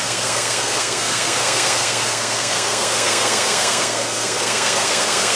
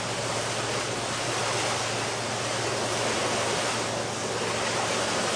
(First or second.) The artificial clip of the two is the first